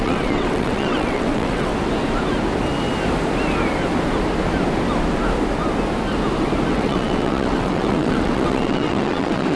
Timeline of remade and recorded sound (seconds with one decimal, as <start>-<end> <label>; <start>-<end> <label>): 0.0-1.7 remade; 1.7-6.7 recorded; 6.7-9.6 remade